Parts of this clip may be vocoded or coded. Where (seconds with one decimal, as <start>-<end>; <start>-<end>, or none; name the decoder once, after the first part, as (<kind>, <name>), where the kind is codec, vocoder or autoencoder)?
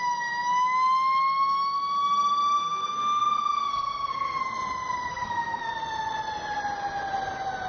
2.6-4.4 (codec, SNAC); 5.1-5.7